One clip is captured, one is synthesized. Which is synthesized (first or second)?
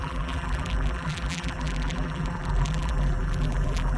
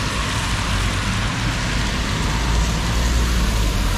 first